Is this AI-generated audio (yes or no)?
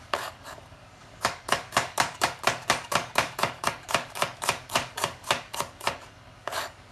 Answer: yes